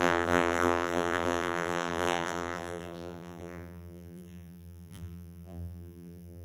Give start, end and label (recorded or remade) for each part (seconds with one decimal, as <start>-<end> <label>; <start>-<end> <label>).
0.0-6.4 remade